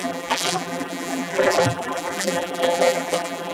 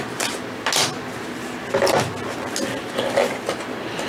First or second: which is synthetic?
first